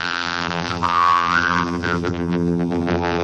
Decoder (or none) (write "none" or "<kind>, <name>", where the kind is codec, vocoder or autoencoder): vocoder, BigVGAN v2